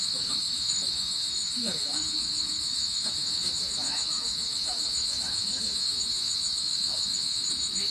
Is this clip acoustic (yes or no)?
no